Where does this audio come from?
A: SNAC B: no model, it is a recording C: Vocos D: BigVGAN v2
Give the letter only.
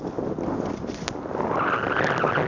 B